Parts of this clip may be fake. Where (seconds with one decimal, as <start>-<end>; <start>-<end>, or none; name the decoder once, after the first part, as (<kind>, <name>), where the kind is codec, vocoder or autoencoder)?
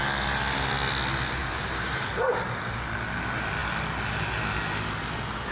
1.4-1.9 (vocoder, BigVGAN v2)